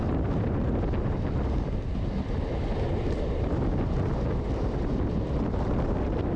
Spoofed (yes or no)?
no